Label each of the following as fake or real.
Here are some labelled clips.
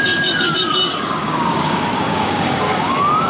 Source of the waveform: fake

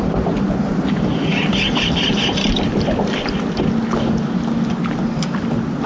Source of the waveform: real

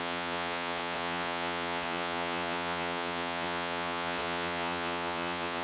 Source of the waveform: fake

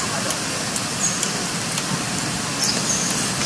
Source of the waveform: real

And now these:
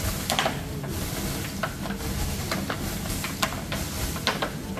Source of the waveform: real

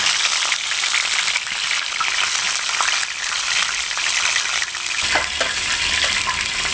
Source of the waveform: real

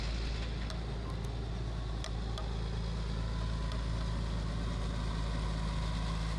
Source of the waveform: real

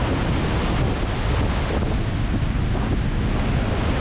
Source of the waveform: real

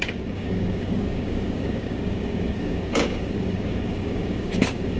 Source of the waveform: fake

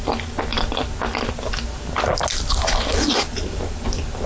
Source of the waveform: real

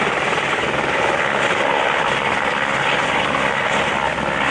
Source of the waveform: real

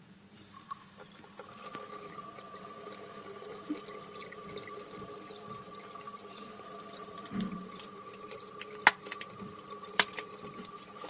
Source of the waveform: fake